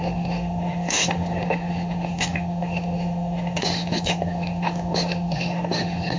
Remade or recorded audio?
remade